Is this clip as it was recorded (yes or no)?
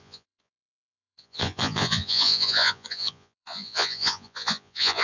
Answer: no